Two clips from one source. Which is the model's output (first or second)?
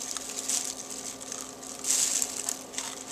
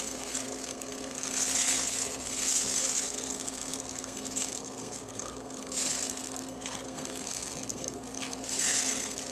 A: second